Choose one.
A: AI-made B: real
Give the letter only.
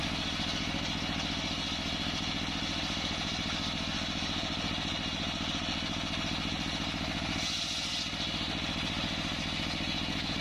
B